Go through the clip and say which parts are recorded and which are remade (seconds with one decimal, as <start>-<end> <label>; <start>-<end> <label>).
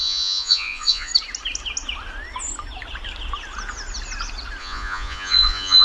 0.0-1.1 remade; 1.1-4.6 recorded; 4.6-5.8 remade